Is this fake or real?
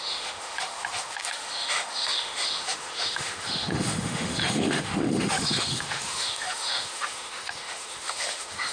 fake